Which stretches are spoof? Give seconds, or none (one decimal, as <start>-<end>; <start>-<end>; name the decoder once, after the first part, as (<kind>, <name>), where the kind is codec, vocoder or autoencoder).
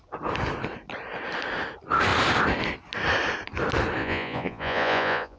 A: 4.0-5.4 (vocoder, Vocos)